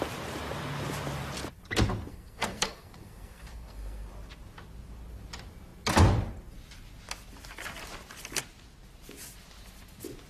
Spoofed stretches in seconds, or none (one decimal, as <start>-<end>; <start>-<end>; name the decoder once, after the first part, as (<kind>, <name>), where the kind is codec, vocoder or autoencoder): 2.1-4.1 (codec, SNAC)